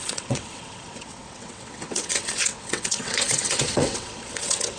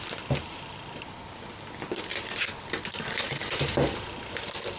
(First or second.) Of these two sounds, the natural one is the second